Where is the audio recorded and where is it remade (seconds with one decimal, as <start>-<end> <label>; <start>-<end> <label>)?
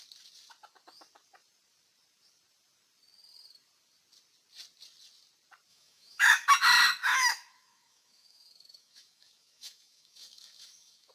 0.0-5.7 recorded; 5.7-6.5 remade; 6.5-7.1 recorded; 7.1-11.1 remade